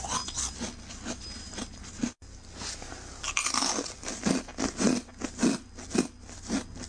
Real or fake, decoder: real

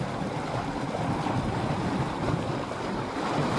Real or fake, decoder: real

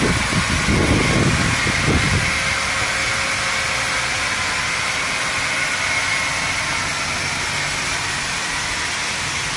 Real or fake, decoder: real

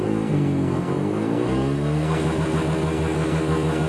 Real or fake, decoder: fake, codec, SNAC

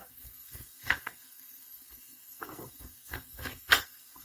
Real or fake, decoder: fake, codec, SNAC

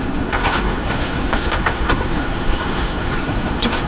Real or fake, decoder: fake, codec, SNAC